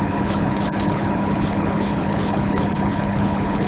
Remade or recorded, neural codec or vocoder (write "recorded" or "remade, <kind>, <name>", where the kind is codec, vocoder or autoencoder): remade, codec, HILCodec